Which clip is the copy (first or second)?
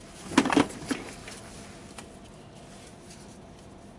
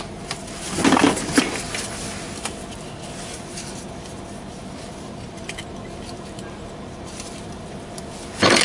second